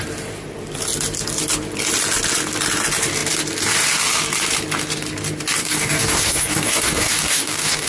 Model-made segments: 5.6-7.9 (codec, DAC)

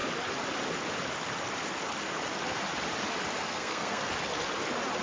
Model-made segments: 3.4-4.1 (codec, SNAC)

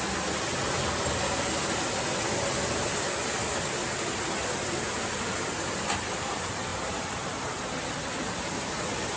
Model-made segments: none

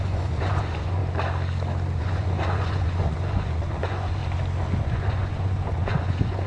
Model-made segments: 0.0-1.0 (vocoder, Vocos); 2.0-4.2; 4.8-6.5

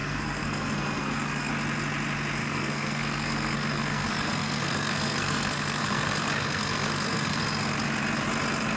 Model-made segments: 0.0-1.5 (codec, SNAC); 2.4-7.4

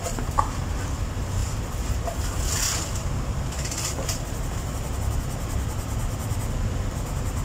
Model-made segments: none

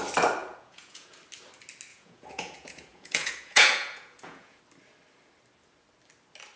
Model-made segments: 0.4-1.2 (vocoder, Vocos); 1.9-4.6